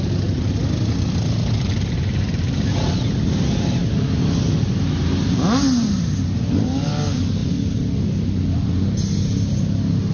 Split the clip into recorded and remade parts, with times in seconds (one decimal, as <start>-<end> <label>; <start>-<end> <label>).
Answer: 0.0-10.1 recorded